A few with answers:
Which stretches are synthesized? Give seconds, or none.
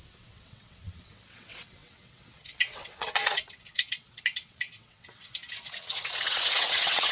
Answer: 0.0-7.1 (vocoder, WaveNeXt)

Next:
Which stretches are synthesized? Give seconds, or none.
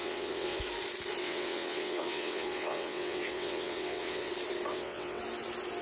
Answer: 0.0-0.6 (vocoder, WaveNeXt); 1.2-4.3; 4.7-5.2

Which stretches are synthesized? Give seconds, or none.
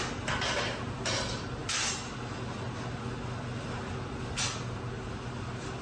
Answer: none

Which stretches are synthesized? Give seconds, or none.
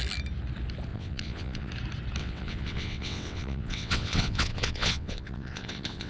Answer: 0.9-1.7 (vocoder, WaveNeXt); 2.2-6.1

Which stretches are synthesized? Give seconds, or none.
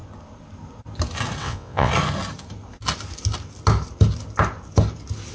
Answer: 1.4-1.9 (vocoder, WaveNeXt)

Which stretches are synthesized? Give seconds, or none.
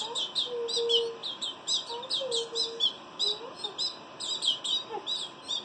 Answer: none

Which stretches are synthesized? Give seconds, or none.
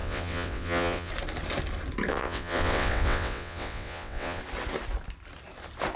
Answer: 0.0-1.1 (vocoder, WaveNeXt); 2.1-4.4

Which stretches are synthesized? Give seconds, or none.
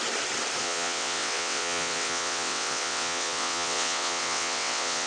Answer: 0.6-5.1 (vocoder, WaveNeXt)